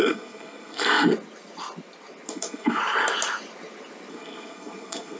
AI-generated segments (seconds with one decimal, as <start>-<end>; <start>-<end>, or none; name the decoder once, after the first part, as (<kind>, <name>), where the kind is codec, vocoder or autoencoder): 0.0-1.1 (codec, SNAC); 2.3-2.8; 4.1-5.2